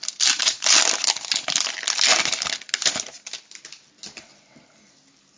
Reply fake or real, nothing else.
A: real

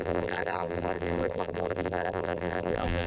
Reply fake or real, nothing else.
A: fake